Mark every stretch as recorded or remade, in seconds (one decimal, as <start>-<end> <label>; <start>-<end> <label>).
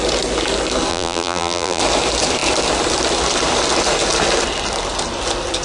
0.0-0.9 recorded; 0.9-1.8 remade; 1.8-5.6 recorded